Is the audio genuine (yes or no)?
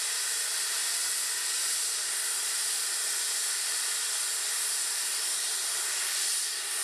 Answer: yes